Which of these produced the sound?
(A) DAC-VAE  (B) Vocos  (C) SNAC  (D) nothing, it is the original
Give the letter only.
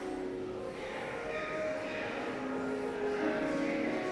D